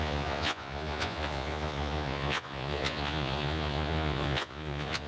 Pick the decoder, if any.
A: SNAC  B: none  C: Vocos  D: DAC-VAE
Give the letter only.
C